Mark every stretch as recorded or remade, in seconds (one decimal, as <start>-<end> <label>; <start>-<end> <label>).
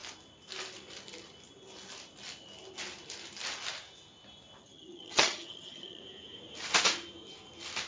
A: 0.0-4.6 recorded; 4.6-6.0 remade; 6.0-7.9 recorded